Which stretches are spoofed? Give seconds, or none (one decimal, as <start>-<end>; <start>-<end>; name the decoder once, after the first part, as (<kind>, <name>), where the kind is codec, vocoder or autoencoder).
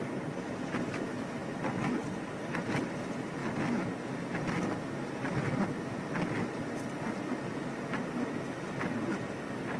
none